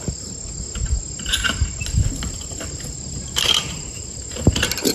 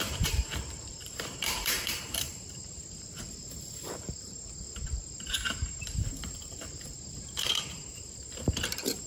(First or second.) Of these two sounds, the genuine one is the first